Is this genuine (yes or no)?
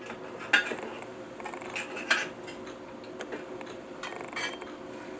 yes